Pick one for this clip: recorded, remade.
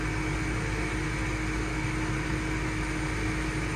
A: recorded